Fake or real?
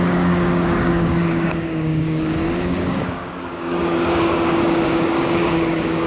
fake